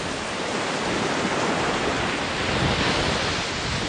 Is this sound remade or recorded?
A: recorded